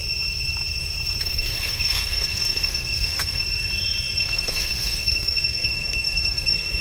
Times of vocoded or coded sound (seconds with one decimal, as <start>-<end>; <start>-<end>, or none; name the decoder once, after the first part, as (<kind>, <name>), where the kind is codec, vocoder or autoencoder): 1.2-3.4 (codec, SNAC); 4.2-6.8